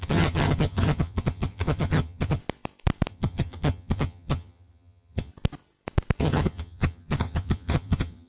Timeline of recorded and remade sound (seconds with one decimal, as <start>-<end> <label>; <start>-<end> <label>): 0.0-2.4 remade; 2.4-3.1 recorded; 3.1-5.3 remade; 5.3-6.2 recorded; 6.2-8.3 remade